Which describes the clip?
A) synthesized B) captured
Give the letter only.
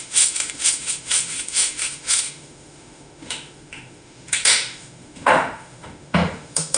A